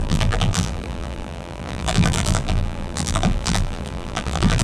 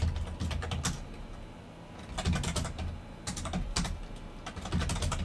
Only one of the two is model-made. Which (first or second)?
first